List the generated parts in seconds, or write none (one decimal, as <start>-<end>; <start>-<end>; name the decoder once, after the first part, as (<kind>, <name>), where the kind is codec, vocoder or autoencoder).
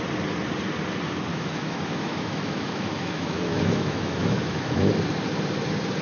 1.3-4.9 (autoencoder, DAC-VAE)